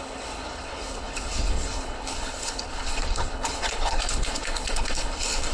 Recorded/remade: remade